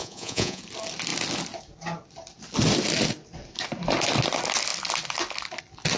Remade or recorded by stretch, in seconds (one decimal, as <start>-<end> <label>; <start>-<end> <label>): 0.0-0.6 remade; 0.6-6.0 recorded